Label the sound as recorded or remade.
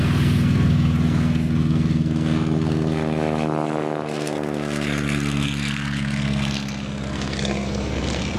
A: remade